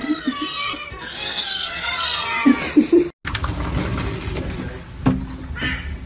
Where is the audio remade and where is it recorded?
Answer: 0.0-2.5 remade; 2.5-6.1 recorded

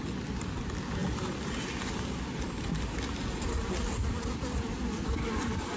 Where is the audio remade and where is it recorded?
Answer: 0.0-5.8 recorded

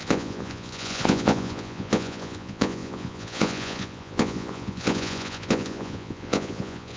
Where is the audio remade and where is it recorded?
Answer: 0.0-7.0 remade

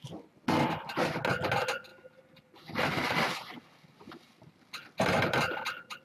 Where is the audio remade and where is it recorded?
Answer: 0.0-6.0 recorded

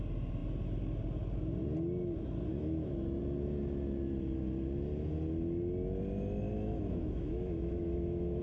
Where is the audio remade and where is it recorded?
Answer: 0.0-2.5 recorded; 2.5-3.2 remade; 3.2-6.5 recorded; 6.5-8.4 remade

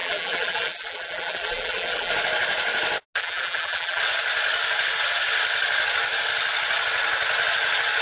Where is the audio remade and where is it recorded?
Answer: 0.0-2.1 remade; 2.1-3.2 recorded; 3.2-4.0 remade; 4.0-8.0 recorded

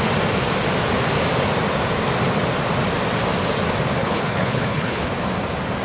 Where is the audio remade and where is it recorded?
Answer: 0.0-4.0 recorded; 4.0-5.0 remade; 5.0-5.8 recorded

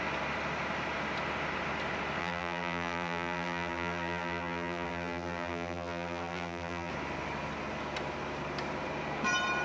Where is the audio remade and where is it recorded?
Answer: 0.0-2.2 recorded; 2.2-6.9 remade; 6.9-9.6 recorded